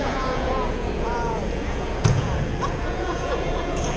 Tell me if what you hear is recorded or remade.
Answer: remade